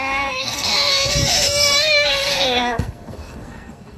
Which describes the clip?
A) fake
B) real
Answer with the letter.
A